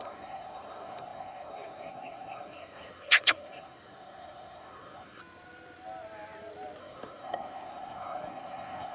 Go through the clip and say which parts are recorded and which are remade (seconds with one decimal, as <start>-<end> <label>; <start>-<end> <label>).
0.0-5.2 remade; 5.2-6.8 recorded; 6.8-8.9 remade